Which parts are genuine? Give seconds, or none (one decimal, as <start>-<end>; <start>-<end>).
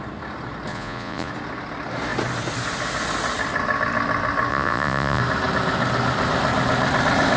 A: 0.0-0.7; 1.3-4.5; 5.2-7.4